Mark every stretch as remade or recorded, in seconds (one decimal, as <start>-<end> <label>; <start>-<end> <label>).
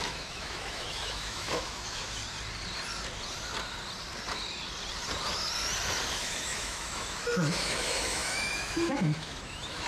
0.0-2.2 remade; 2.2-6.1 recorded; 6.1-9.9 remade